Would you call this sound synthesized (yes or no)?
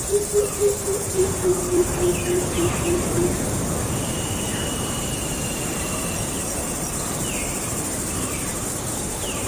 yes